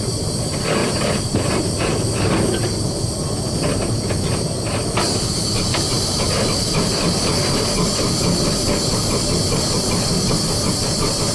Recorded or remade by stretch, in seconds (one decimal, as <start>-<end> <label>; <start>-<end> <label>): 0.0-0.8 recorded; 0.8-1.6 remade; 1.6-5.7 recorded; 5.7-6.7 remade; 6.7-11.3 recorded